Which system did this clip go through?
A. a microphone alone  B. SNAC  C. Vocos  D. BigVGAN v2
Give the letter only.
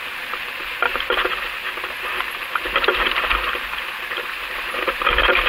A